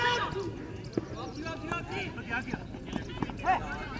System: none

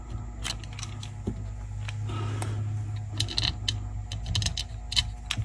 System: none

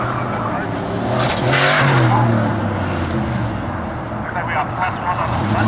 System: none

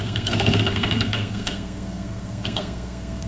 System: codec, SNAC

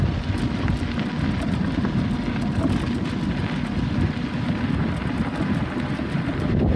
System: none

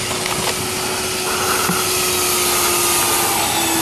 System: none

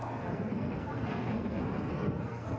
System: codec, SNAC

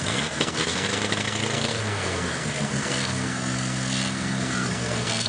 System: codec, SNAC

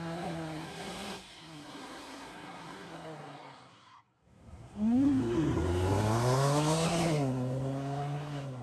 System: codec, SNAC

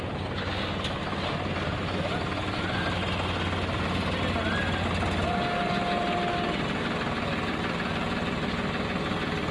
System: none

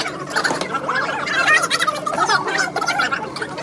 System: none